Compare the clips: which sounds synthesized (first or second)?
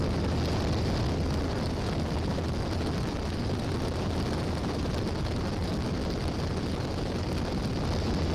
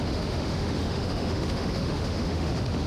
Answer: second